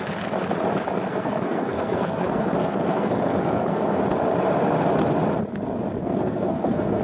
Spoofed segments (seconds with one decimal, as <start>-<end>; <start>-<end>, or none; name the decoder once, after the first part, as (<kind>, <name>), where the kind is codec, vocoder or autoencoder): 1.1-4.0 (codec, SNAC); 6.0-7.0